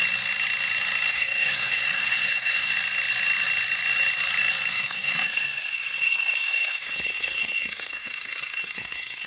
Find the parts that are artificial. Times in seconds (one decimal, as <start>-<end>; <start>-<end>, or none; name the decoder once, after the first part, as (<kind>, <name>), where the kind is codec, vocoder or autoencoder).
1.1-2.7 (codec, SNAC); 4.7-9.3